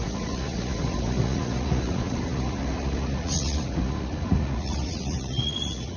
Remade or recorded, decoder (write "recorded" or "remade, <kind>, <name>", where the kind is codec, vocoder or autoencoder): remade, vocoder, Vocos